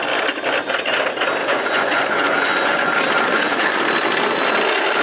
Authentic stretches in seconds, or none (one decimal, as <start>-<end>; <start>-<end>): 0.0-1.4; 2.9-3.3; 3.8-5.0

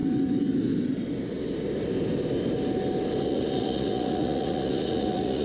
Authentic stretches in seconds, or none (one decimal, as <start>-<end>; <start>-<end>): 0.0-3.2